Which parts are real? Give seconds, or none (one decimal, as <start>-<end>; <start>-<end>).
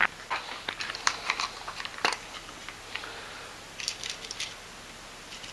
0.0-5.5